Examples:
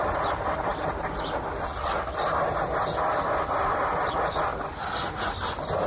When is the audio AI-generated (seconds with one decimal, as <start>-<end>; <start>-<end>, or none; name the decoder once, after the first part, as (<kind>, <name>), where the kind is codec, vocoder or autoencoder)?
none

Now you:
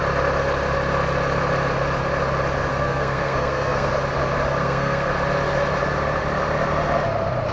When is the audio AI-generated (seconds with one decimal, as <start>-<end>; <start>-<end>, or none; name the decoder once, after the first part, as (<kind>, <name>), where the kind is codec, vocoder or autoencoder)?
2.7-3.9 (codec, SNAC); 4.6-5.1

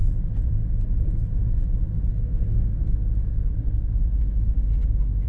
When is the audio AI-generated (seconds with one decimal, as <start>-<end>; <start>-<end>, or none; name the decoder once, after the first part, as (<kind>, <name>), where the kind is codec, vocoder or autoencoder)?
2.1-3.5 (codec, SNAC)

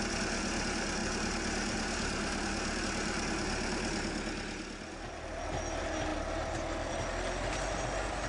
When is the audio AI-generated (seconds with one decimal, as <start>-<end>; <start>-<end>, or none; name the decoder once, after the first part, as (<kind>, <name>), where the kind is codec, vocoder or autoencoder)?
none